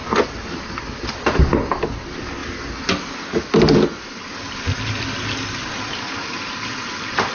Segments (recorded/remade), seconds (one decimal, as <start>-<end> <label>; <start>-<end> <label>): 0.0-7.3 recorded